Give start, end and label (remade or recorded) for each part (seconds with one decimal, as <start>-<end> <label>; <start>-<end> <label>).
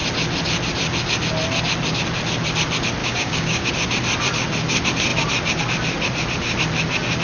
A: 0.0-3.0 recorded; 3.0-3.7 remade; 3.7-7.2 recorded